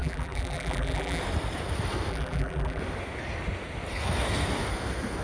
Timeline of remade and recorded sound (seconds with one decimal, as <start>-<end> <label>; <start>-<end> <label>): 0.0-1.2 remade; 1.2-2.1 recorded; 2.1-2.8 remade; 2.8-5.2 recorded